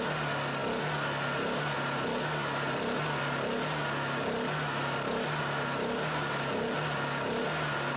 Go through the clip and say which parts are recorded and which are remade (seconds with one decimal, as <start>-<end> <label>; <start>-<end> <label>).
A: 0.0-8.0 recorded